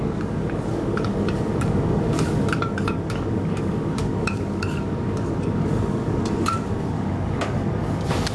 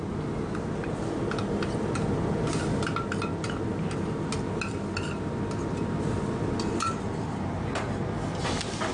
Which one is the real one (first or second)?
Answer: second